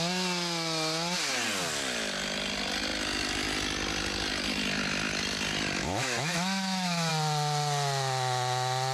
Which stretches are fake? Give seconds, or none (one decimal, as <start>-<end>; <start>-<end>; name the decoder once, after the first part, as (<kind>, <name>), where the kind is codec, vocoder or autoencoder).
5.8-7.1 (autoencoder, DAC-VAE)